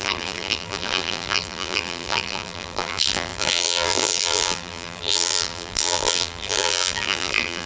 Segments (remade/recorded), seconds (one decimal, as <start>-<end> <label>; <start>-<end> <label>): 0.0-7.7 remade